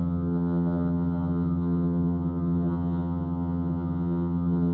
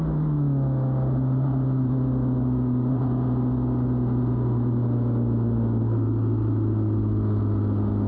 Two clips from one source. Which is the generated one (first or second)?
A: first